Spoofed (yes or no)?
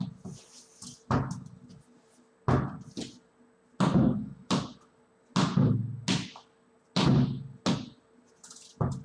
no